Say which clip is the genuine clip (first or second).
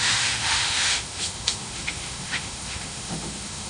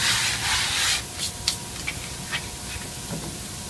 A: second